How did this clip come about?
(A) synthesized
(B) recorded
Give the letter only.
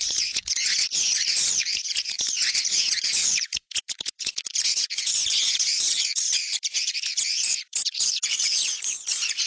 A